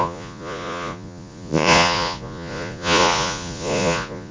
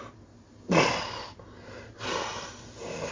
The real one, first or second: second